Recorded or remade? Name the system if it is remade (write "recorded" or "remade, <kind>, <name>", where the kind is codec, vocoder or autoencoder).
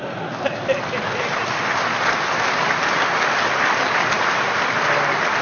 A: recorded